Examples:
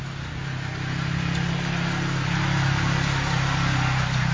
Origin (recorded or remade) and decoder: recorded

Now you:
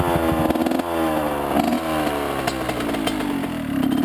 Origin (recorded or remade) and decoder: recorded